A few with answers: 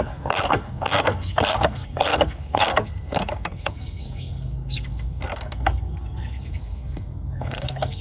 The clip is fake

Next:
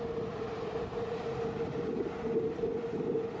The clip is real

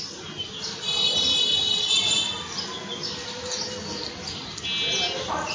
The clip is real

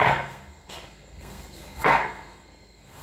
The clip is fake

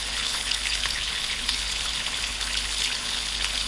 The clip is fake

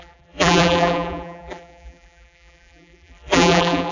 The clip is fake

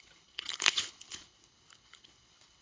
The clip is fake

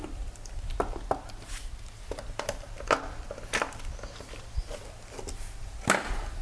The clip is real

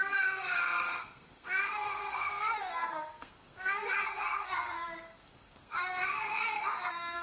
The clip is fake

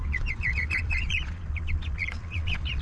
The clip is fake